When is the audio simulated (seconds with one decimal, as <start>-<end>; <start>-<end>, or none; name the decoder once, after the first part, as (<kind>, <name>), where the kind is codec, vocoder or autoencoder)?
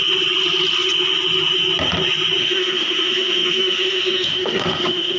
2.4-5.2 (autoencoder, DAC-VAE)